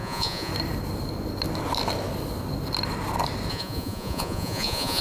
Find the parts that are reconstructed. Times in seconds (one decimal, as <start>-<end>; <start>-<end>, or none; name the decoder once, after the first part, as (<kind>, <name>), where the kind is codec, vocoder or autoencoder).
0.0-0.5 (vocoder, Vocos); 3.5-5.0